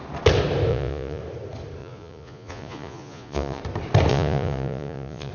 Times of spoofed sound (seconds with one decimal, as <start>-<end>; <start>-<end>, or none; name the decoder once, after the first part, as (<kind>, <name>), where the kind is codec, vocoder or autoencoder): 0.7-1.2 (vocoder, Vocos); 1.8-3.6; 4.1-5.3